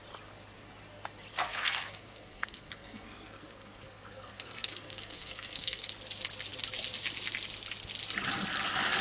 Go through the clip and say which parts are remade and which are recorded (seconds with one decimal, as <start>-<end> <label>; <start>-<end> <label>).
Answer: 0.0-1.3 recorded; 1.3-5.9 remade; 5.9-9.0 recorded